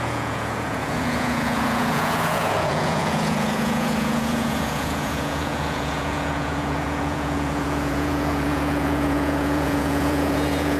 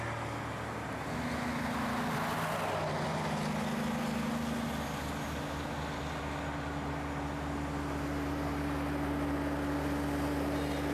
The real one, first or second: second